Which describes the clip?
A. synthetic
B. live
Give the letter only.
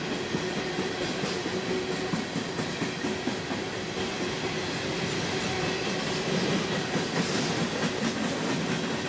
B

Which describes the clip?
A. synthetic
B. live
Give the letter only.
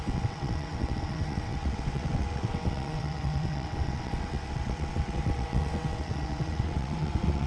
A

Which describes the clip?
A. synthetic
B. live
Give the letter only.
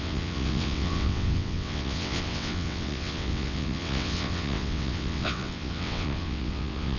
A